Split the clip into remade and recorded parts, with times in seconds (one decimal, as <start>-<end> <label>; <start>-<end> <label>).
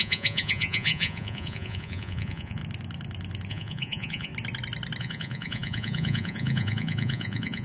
0.0-2.6 remade; 2.6-3.5 recorded; 3.5-4.3 remade; 4.3-5.0 recorded; 5.0-7.6 remade